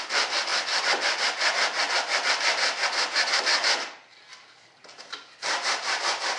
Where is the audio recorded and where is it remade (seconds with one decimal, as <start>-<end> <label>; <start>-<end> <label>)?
0.0-6.4 recorded